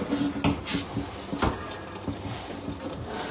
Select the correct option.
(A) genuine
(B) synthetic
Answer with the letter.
A